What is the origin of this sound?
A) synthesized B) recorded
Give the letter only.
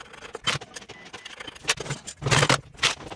B